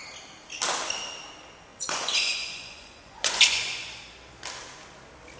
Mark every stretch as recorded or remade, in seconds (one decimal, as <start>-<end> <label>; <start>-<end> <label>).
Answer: 0.0-1.7 recorded; 1.7-4.0 remade; 4.0-5.4 recorded